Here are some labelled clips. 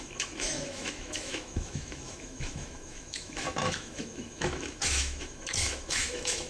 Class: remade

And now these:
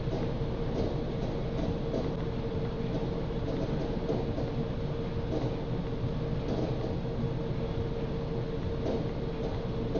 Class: recorded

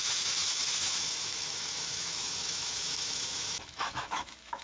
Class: remade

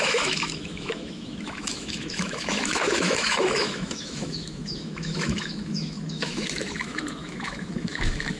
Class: remade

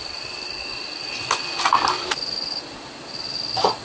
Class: recorded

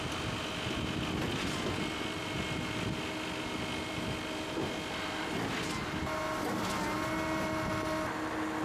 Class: recorded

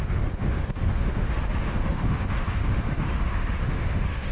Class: remade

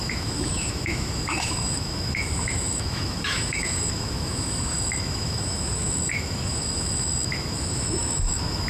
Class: remade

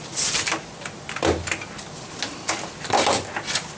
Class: recorded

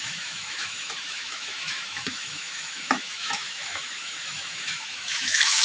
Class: remade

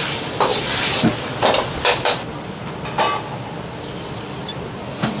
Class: recorded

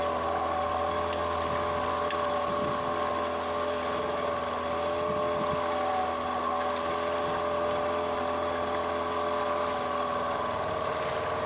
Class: recorded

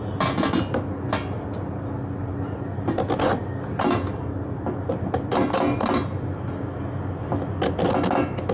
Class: recorded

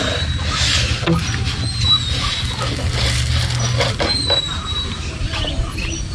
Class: recorded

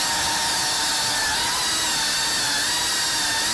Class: recorded